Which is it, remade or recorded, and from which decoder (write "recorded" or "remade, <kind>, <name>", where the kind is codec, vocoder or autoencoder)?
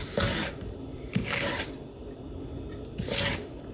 recorded